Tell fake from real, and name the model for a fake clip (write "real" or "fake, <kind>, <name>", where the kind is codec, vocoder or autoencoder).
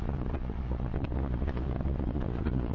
fake, vocoder, Vocos